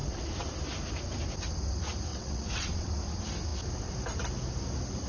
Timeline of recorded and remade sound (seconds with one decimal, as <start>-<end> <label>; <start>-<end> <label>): 0.0-2.1 recorded; 2.1-2.9 remade; 2.9-5.1 recorded